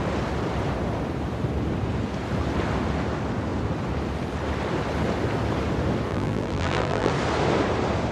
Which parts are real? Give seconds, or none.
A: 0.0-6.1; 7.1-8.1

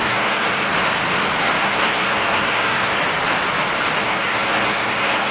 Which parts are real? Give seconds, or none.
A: 0.7-1.6; 3.0-4.0